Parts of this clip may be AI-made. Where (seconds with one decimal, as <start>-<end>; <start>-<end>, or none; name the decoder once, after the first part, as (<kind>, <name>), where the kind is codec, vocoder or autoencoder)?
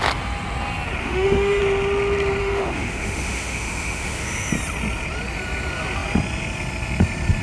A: 1.0-1.6 (autoencoder, DAC-VAE); 2.4-4.5